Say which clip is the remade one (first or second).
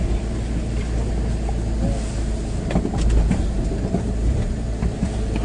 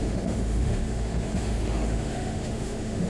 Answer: second